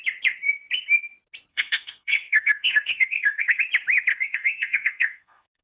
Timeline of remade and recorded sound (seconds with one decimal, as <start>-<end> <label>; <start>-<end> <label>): 0.0-1.5 recorded; 1.5-3.6 remade; 3.6-4.1 recorded; 4.1-5.6 remade